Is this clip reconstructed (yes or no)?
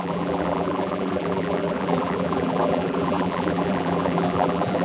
yes